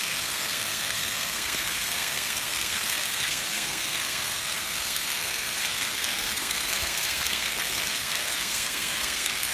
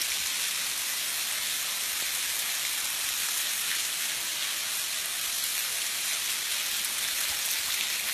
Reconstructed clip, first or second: first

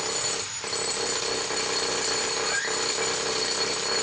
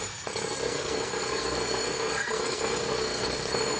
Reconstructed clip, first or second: second